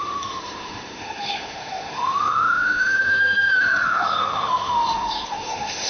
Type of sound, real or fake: fake